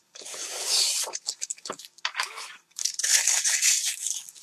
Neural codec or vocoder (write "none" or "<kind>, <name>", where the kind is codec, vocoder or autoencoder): codec, DAC